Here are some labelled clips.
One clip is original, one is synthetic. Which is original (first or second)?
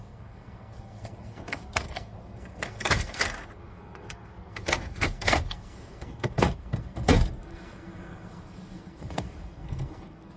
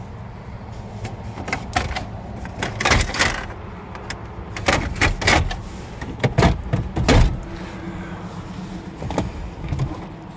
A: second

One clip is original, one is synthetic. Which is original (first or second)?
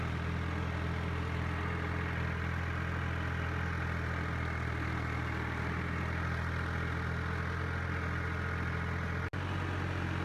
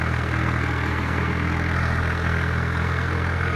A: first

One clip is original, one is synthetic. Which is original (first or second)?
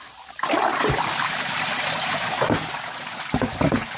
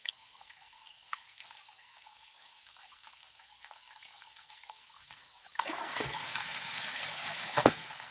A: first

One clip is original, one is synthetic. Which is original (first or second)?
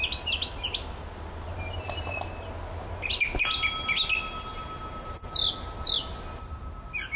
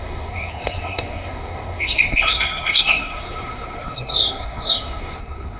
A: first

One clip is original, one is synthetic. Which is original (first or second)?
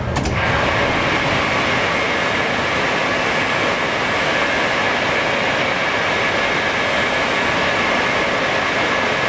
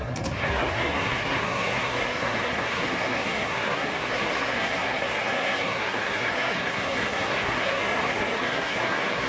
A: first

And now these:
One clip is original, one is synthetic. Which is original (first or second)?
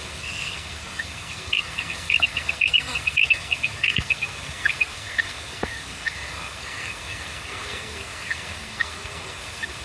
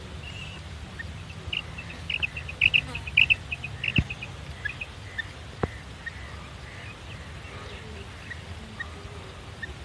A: second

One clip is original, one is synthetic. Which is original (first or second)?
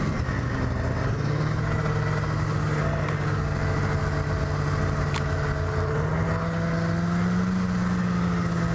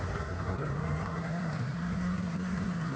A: first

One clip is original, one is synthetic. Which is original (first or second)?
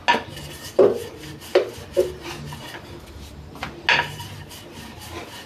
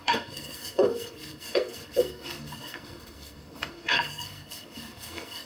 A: first